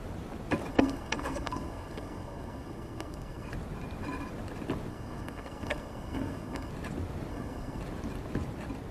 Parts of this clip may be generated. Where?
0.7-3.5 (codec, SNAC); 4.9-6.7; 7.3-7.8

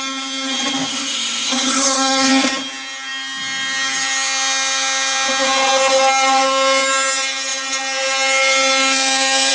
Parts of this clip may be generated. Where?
0.9-2.3 (codec, SNAC)

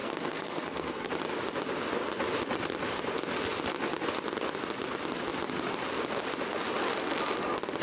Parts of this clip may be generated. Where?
0.0-1.1 (codec, SNAC)

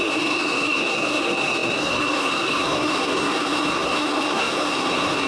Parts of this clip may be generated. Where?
0.0-5.3 (codec, SNAC)

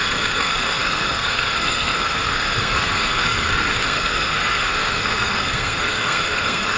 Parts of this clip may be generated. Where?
0.0-6.8 (codec, SNAC)